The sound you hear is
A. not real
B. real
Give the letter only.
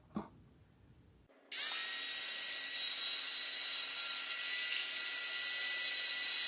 B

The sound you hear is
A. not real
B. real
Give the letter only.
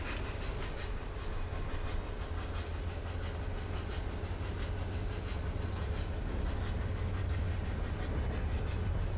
B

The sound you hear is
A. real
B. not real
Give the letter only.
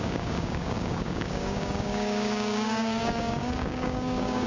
B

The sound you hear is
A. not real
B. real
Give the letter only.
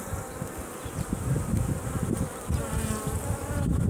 B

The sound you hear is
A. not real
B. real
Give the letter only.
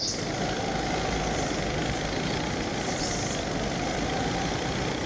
B